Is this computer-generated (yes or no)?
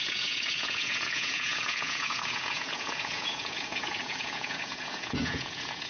yes